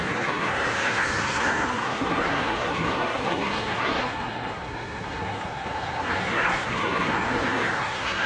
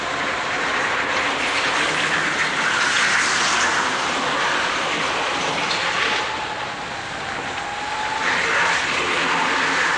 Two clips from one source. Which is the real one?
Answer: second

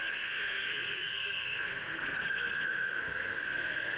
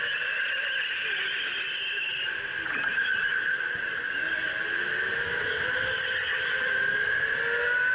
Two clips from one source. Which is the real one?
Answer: second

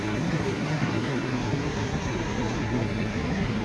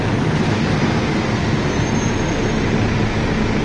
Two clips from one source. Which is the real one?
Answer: second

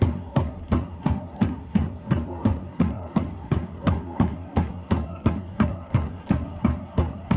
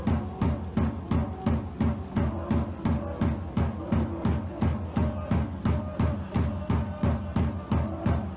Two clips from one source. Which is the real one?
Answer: second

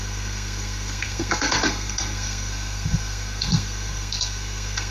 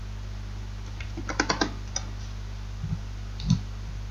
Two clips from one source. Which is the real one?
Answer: second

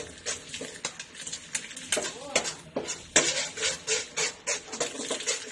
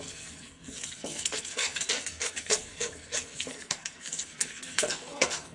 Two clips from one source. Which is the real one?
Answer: first